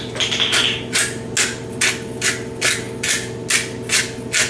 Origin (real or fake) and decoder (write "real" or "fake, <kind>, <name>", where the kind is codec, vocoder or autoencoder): real